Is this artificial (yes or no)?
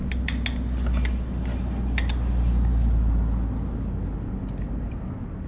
no